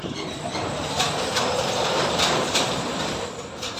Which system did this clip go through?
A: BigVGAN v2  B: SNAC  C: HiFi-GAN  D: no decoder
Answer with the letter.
A